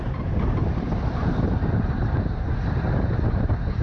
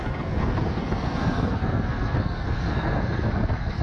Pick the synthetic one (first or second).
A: second